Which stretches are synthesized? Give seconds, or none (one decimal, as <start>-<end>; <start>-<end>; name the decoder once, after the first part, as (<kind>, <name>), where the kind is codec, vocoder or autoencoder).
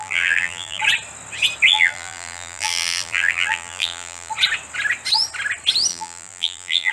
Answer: 0.0-0.8 (vocoder, BigVGAN v2); 1.7-4.3; 5.9-6.9